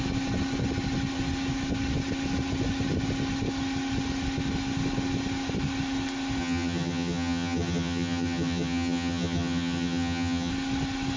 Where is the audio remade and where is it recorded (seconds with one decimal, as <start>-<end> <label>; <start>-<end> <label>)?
0.0-6.4 recorded; 6.4-10.5 remade; 10.5-11.2 recorded